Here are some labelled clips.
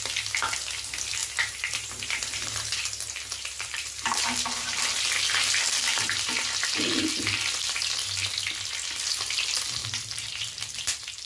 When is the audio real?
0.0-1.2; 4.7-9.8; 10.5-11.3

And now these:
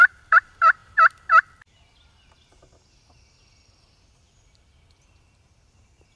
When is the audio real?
0.8-4.2